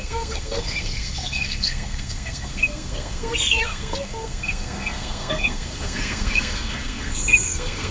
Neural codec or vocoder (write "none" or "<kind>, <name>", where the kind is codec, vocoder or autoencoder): codec, SNAC